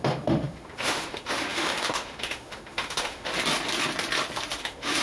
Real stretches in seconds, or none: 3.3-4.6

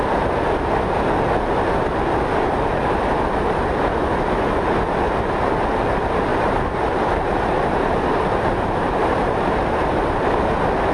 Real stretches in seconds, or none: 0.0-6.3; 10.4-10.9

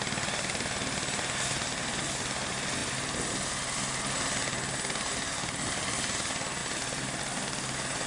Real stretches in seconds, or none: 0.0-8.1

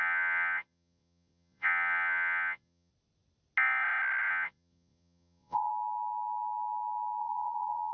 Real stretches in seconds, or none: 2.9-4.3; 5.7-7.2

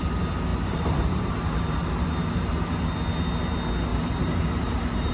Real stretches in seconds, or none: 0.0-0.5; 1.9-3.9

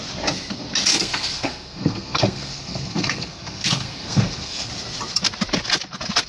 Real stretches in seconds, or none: 0.0-0.9; 4.7-6.3